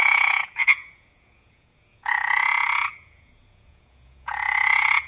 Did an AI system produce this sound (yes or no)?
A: yes